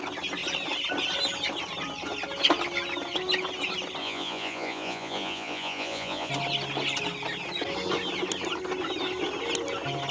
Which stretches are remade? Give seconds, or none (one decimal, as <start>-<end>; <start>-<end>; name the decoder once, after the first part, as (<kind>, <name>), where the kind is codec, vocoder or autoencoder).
4.0-6.3 (vocoder, Vocos)